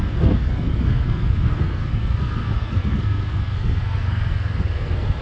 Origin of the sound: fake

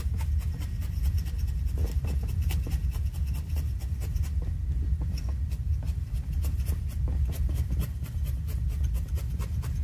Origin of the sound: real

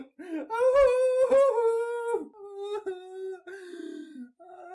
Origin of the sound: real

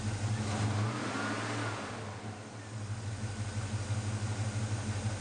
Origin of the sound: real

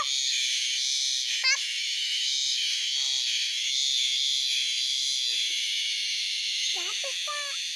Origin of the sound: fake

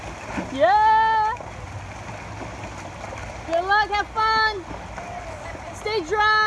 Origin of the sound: real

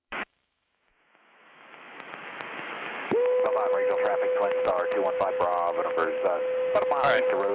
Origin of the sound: fake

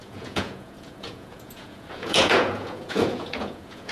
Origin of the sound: fake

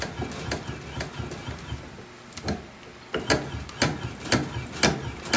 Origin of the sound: real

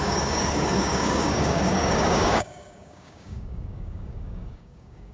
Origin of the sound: fake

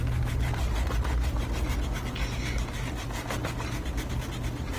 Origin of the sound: real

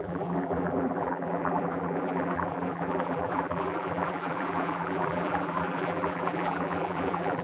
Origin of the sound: fake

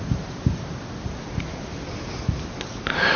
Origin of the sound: real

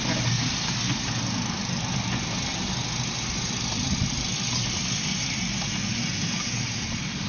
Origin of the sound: real